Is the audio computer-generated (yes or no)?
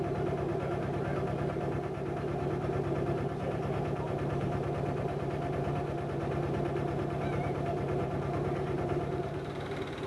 yes